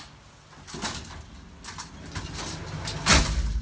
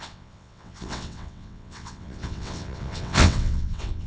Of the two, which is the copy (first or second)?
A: second